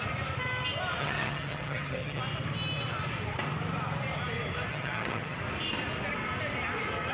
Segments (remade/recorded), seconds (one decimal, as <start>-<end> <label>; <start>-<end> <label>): 0.0-1.0 recorded; 1.0-2.2 remade; 2.2-4.7 recorded; 4.7-5.4 remade; 5.4-7.1 recorded